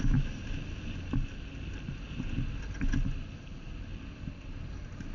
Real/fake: real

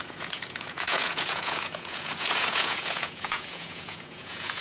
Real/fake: fake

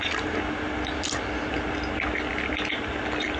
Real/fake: real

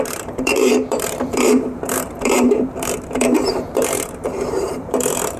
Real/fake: fake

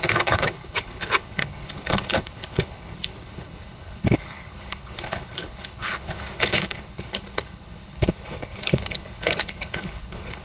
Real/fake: fake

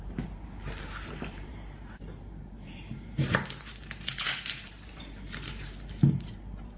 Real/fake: fake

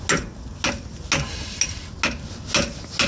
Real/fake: real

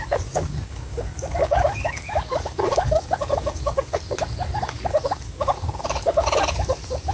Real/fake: fake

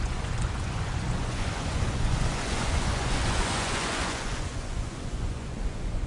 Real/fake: fake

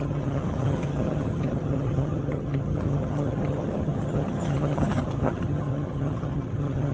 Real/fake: fake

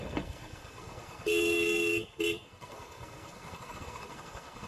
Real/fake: fake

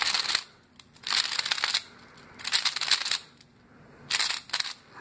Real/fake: real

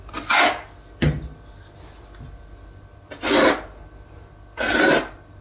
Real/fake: real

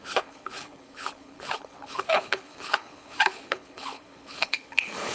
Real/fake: fake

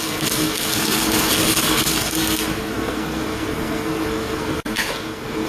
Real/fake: fake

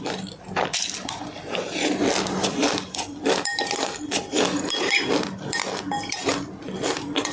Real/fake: fake